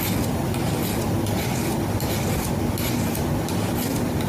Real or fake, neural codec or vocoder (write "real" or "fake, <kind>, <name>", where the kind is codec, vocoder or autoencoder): real